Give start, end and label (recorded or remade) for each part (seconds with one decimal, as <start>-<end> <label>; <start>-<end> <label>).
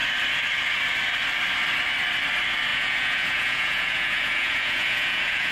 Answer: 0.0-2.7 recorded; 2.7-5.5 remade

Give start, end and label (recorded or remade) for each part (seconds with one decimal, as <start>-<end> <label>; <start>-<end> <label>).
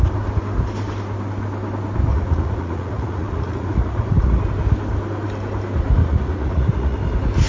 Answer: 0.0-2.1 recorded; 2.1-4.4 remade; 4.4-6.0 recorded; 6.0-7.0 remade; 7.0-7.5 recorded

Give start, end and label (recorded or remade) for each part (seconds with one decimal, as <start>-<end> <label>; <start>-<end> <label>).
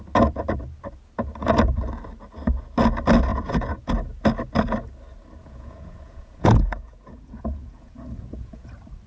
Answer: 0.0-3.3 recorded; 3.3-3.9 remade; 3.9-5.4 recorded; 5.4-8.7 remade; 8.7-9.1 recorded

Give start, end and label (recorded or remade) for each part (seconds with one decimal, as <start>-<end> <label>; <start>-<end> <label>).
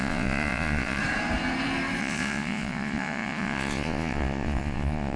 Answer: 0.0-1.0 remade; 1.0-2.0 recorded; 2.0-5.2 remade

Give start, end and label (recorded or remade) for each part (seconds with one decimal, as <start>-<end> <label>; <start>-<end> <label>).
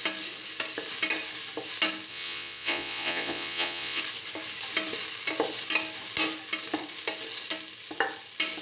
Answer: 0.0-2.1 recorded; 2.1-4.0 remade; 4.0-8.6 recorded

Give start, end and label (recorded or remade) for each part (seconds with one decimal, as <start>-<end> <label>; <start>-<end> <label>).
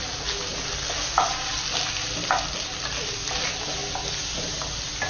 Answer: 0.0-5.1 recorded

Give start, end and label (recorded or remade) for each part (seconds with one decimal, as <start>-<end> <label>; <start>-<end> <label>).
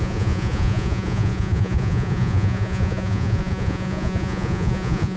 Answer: 0.0-5.2 remade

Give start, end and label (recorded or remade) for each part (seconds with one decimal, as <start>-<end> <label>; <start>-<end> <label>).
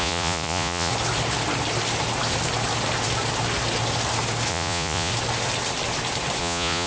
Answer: 0.0-0.9 remade; 0.9-4.5 recorded; 4.5-5.1 remade; 5.1-6.4 recorded; 6.4-6.9 remade